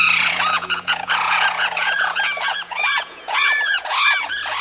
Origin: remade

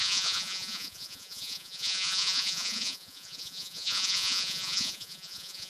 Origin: remade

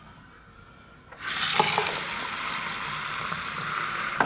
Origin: recorded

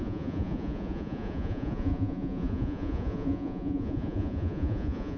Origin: remade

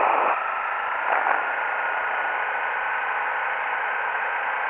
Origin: recorded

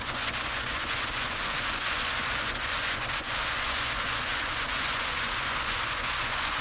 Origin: remade